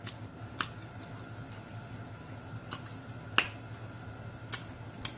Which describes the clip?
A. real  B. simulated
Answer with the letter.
A